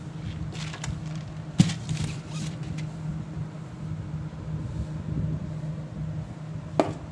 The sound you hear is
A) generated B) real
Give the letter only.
B